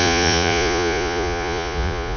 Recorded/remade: remade